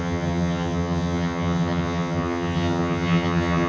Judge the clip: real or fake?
fake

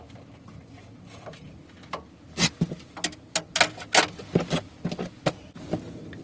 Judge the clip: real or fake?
real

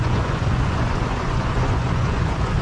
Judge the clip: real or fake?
fake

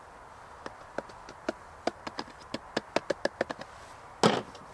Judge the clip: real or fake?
real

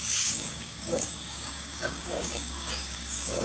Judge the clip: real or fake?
fake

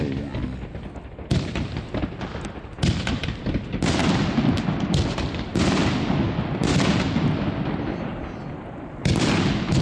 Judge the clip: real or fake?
real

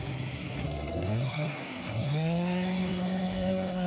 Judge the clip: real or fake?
fake